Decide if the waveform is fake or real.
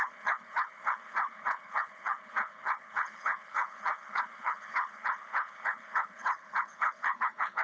fake